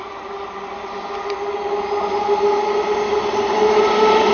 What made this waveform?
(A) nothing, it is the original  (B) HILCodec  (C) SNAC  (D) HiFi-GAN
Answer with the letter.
A